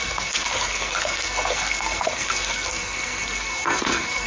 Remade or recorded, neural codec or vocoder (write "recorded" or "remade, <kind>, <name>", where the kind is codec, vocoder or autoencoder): remade, codec, SNAC